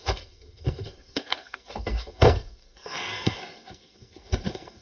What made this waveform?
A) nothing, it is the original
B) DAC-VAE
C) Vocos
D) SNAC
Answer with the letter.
D